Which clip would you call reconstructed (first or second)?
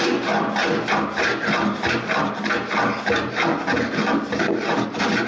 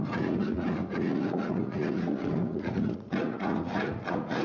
second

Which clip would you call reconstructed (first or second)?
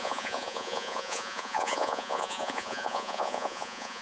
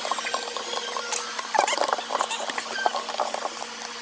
first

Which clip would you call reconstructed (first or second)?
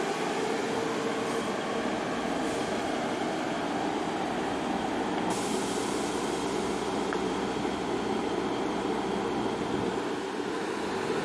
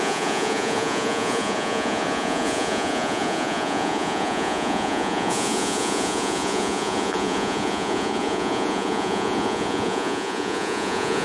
second